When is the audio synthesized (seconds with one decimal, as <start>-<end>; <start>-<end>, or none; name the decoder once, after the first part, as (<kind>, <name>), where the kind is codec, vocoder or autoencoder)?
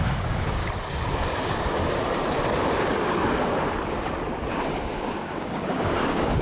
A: 0.0-0.6 (codec, DAC); 1.4-2.0; 4.5-6.4